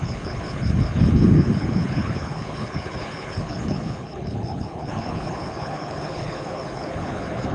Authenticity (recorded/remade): remade